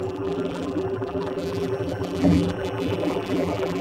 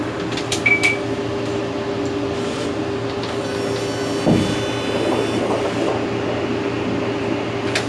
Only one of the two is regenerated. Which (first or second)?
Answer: first